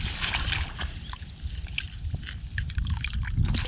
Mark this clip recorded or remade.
recorded